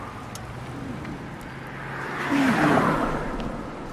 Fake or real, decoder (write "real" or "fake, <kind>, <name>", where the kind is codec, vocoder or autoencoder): real